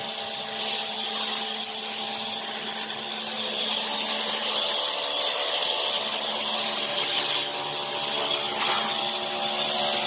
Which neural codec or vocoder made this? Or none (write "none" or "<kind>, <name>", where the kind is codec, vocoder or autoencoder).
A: none